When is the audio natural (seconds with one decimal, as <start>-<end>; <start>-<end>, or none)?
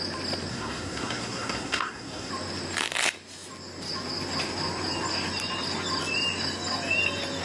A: 0.0-0.5; 2.3-7.4